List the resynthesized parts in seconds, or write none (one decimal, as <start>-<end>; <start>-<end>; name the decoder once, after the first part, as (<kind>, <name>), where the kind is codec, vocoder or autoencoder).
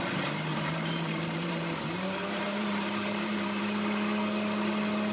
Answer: 0.5-3.6 (vocoder, BigVGAN v2)